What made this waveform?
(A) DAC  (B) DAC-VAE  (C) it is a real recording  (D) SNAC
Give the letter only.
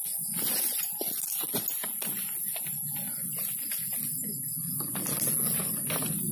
C